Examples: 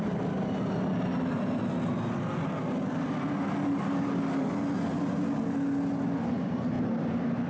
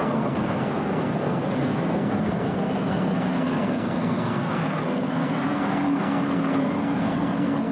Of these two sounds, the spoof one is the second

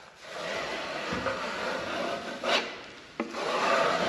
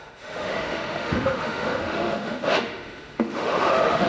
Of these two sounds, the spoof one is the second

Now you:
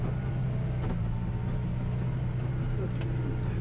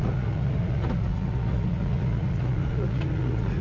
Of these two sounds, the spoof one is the second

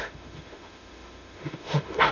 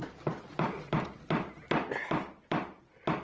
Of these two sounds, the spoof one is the first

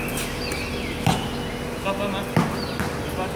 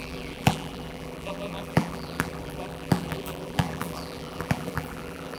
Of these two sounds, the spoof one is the second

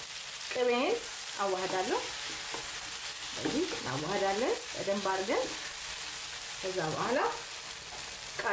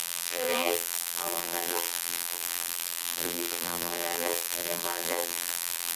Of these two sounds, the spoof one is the second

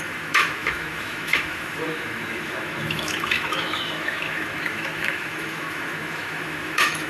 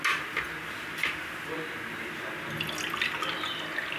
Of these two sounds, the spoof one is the first